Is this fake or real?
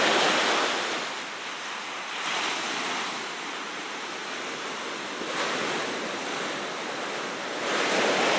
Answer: real